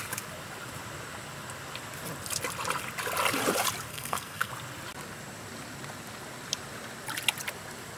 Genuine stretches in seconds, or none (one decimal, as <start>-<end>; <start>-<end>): 0.0-3.9; 4.5-8.0